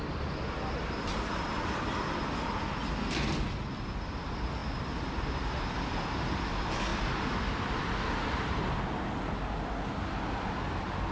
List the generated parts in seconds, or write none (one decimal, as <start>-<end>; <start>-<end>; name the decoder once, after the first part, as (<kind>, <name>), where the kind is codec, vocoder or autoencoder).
none